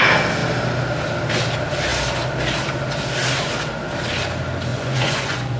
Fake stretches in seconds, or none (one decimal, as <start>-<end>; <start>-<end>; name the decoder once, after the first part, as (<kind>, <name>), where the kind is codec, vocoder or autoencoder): 4.7-5.6 (vocoder, Vocos)